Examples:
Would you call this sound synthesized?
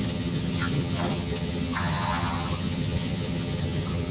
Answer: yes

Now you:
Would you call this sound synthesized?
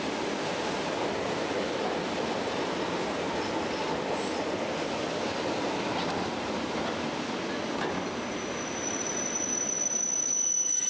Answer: no